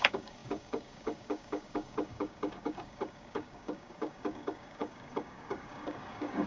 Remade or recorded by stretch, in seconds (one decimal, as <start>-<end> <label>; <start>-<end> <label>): 0.0-6.5 remade